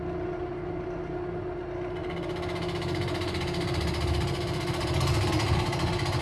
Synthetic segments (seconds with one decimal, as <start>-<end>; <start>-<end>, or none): none